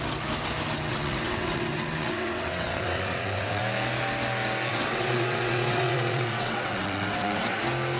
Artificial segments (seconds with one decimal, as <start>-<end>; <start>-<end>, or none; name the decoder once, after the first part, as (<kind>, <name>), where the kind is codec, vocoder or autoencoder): 0.9-3.6 (vocoder, WaveNeXt); 4.7-7.6